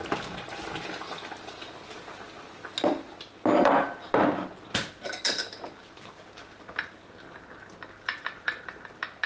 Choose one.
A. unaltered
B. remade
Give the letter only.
A